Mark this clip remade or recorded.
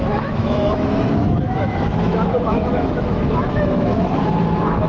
remade